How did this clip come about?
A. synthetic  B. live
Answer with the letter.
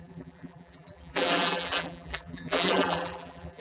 A